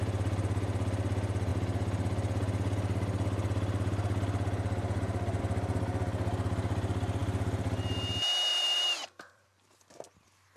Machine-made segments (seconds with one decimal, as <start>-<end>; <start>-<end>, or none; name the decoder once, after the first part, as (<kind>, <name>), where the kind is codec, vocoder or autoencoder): 8.5-9.7 (vocoder, BigVGAN v2)